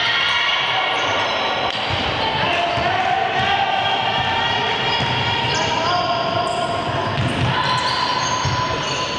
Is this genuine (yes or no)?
yes